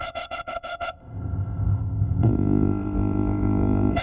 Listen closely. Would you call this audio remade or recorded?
remade